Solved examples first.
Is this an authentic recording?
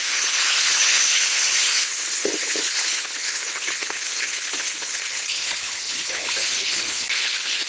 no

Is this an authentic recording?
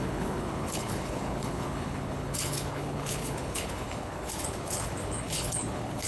no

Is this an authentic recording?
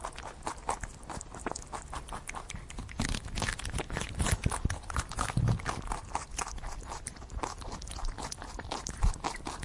yes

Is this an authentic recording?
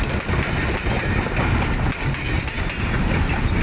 yes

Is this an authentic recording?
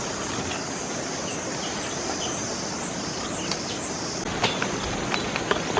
yes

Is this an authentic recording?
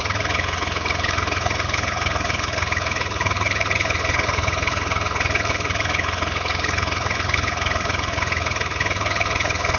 no